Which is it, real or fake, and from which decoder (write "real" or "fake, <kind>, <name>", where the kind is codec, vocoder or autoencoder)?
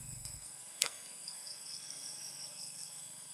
fake, codec, SNAC